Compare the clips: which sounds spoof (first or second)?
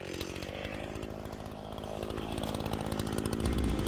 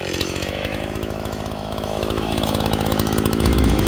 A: second